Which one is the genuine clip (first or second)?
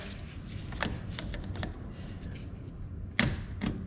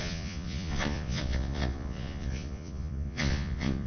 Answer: first